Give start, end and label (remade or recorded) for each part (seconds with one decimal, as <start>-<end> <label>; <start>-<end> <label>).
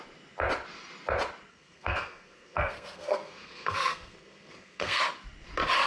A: 0.0-1.5 recorded; 1.5-5.0 remade; 5.0-5.9 recorded